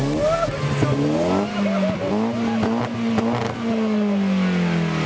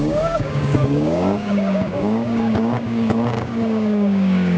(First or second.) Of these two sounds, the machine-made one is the second